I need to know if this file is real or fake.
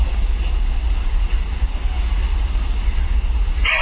real